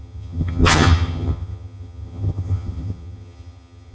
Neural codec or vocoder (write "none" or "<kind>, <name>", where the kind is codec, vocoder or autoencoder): vocoder, HiFi-GAN